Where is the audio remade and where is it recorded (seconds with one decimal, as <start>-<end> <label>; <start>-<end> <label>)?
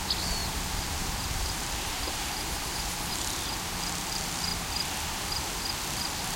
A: 0.0-0.4 recorded; 0.4-3.1 remade; 3.1-6.4 recorded